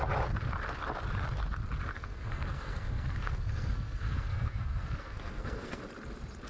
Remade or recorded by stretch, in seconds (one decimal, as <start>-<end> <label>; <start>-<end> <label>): 0.0-1.9 recorded; 1.9-5.8 remade; 5.8-6.5 recorded